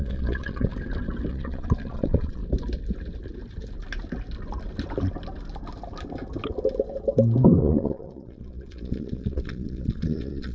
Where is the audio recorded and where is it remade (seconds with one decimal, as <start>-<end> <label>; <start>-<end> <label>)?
0.0-0.7 remade; 0.7-1.3 recorded; 1.3-2.4 remade; 2.4-7.6 recorded; 7.6-10.5 remade